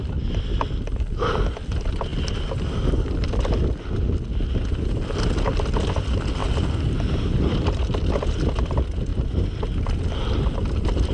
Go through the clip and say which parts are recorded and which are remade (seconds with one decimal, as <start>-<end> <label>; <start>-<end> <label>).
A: 0.0-11.1 recorded

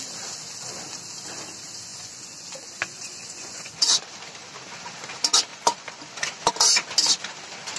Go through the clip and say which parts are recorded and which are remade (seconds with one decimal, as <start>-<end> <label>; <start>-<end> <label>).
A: 0.0-1.9 recorded; 1.9-4.1 remade; 4.1-5.5 recorded; 5.5-6.5 remade; 6.5-7.8 recorded

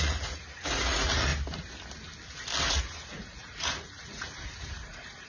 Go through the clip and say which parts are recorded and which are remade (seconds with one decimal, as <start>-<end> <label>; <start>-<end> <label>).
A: 0.0-1.3 remade; 1.3-2.7 recorded; 2.7-5.3 remade